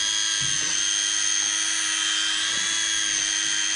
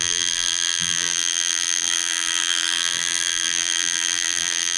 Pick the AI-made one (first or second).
second